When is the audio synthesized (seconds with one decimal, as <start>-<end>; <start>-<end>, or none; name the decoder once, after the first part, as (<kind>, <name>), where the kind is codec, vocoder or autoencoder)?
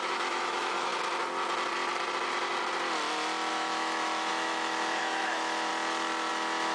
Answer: 0.0-0.9 (autoencoder, DAC-VAE); 3.5-5.7; 6.3-6.7